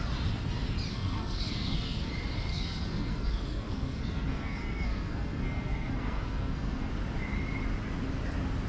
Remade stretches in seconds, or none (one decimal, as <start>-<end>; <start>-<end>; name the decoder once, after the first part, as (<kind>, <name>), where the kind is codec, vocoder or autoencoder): 0.9-2.1 (codec, SNAC); 2.5-6.9